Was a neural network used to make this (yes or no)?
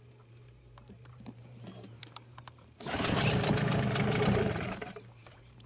yes